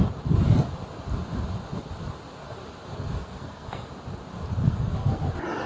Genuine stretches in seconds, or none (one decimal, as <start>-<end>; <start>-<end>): 0.0-2.9; 3.9-4.6; 5.2-5.7